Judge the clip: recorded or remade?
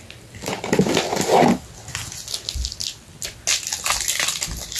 recorded